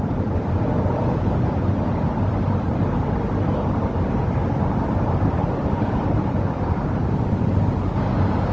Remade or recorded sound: recorded